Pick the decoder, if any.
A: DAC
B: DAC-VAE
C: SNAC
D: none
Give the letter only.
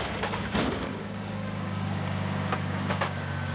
A